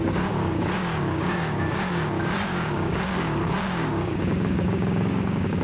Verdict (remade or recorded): remade